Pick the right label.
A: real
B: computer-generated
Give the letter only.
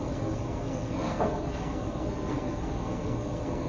B